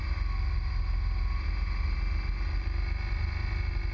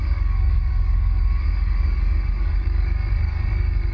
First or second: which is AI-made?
second